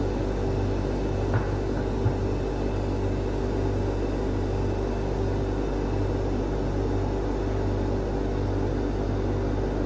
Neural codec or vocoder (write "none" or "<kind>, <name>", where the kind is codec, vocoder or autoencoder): none